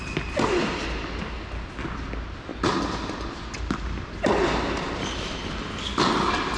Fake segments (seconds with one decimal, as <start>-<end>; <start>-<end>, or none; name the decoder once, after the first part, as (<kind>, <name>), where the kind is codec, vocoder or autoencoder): none